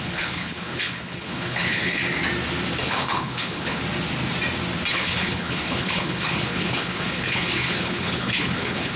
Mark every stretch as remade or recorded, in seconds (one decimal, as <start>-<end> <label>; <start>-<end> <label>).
0.0-2.0 remade; 2.0-2.8 recorded; 2.8-3.8 remade; 3.8-4.9 recorded; 4.9-9.0 remade